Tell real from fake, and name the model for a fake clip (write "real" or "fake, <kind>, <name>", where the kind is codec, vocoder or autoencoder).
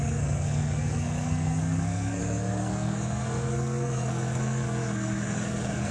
fake, codec, SNAC